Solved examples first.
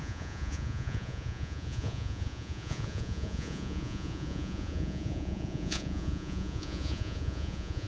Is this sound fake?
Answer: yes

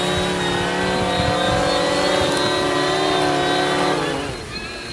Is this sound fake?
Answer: no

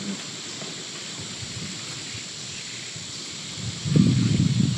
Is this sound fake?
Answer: no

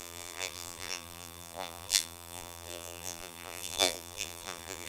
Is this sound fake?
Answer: yes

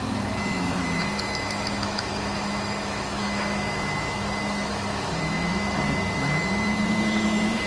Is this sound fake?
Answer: yes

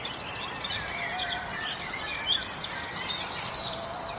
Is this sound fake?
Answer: yes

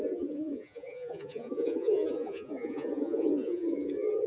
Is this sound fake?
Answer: yes